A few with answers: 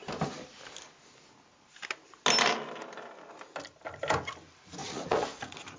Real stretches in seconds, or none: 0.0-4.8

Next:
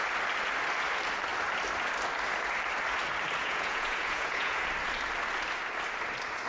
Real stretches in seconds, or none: 0.0-3.4; 4.6-6.5

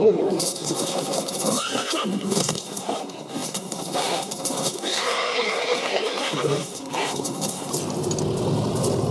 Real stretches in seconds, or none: 7.7-9.1

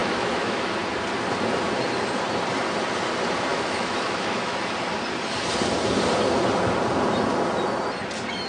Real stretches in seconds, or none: 0.7-3.5; 4.7-8.5

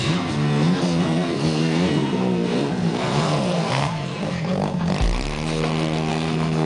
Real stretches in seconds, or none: 4.9-6.1

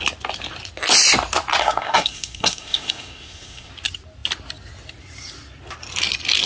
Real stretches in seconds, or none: 0.0-1.6; 3.7-6.5